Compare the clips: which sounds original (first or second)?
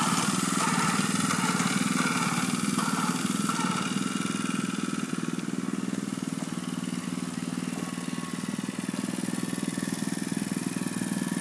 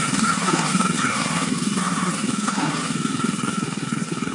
first